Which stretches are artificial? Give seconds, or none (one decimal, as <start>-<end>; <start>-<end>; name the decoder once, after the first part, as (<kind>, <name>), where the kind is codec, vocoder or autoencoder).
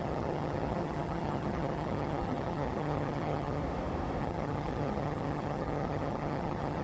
0.0-3.6 (vocoder, HiFi-GAN); 4.2-6.8